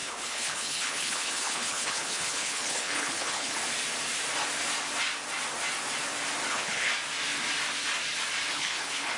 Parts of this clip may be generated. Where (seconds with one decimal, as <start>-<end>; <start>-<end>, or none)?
0.0-3.6; 6.5-6.9; 8.5-9.2